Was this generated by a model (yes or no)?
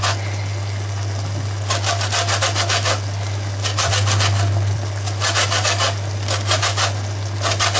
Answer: no